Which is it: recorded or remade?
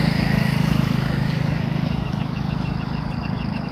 remade